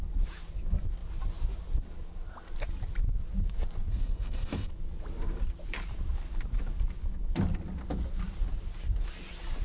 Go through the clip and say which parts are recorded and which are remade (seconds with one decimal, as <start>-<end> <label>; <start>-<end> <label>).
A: 0.0-3.9 recorded; 3.9-4.7 remade; 4.7-9.6 recorded